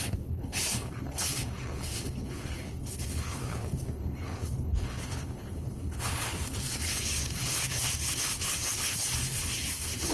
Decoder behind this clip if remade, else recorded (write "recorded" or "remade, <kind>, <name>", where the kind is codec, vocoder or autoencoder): remade, codec, HILCodec